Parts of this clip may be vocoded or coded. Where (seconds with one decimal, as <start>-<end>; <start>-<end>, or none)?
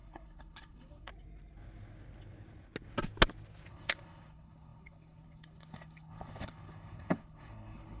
0.0-1.1; 3.7-8.0